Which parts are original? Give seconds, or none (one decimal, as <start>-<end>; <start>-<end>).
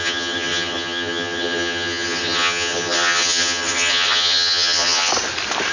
5.1-5.7